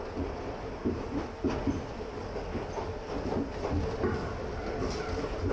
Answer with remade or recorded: recorded